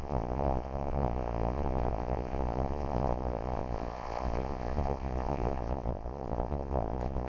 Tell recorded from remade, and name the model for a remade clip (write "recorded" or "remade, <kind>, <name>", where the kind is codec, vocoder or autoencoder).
remade, vocoder, Vocos